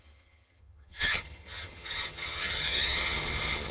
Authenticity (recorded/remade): remade